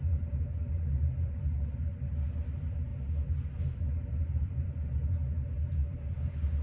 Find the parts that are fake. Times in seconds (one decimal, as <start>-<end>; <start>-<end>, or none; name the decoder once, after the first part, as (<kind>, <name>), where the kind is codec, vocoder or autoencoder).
0.0-1.9 (vocoder, BigVGAN v2); 2.4-2.9; 3.6-6.6